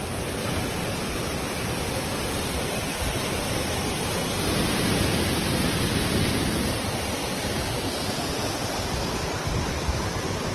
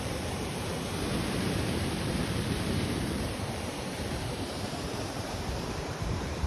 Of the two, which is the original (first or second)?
first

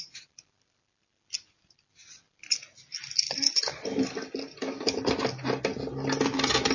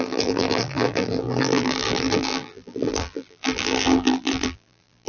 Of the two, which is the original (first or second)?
first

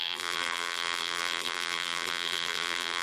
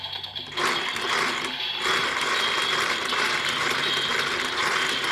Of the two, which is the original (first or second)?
second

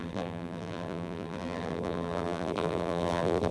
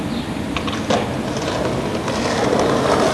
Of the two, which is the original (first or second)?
second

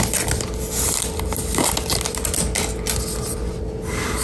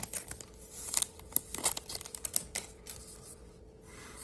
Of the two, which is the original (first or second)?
first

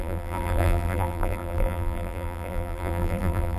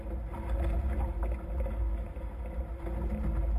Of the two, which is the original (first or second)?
second